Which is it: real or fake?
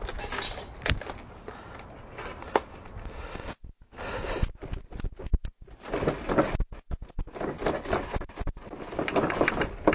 real